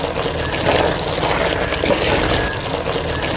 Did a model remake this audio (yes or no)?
no